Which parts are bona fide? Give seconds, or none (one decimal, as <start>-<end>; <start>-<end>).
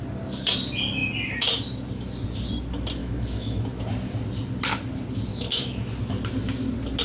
0.0-3.0; 3.9-5.3; 5.9-7.0